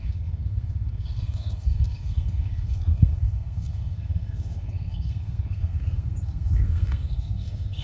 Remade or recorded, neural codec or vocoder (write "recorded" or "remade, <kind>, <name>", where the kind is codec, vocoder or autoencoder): remade, codec, SNAC